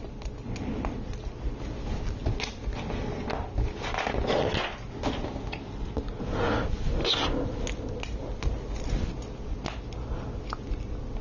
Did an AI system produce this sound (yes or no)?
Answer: no